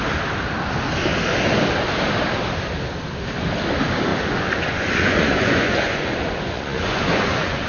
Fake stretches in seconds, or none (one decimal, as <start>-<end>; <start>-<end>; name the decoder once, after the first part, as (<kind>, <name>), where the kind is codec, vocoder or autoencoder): 4.1-7.7 (vocoder, Vocos)